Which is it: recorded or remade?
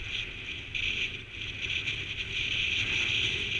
recorded